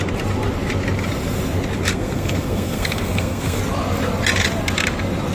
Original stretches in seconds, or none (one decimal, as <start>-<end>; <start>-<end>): 0.0-1.9; 3.6-5.3